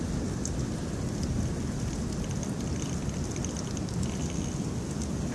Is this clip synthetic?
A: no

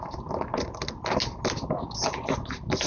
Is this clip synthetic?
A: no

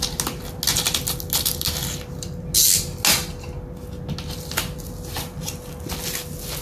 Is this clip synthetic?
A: no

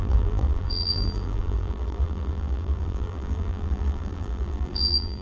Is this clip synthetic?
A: yes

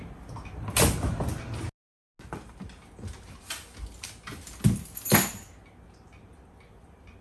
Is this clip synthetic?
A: no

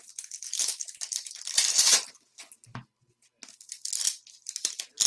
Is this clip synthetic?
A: no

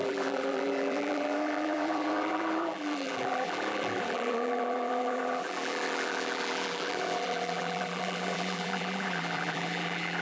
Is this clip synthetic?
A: yes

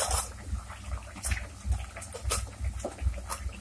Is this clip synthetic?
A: no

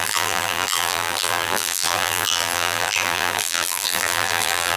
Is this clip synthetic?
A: yes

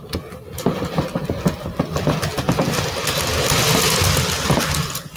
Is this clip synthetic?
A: no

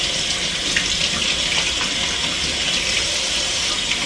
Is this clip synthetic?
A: no